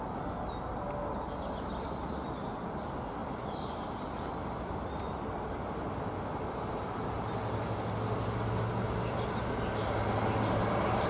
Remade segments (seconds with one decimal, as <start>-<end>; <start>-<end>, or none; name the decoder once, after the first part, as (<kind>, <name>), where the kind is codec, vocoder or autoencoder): none